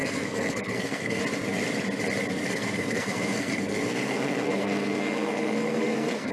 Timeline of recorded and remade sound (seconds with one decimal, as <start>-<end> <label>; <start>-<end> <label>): 0.0-1.2 remade; 1.2-2.4 recorded; 2.4-6.3 remade